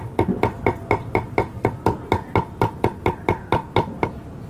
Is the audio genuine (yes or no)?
yes